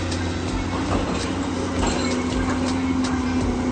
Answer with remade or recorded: recorded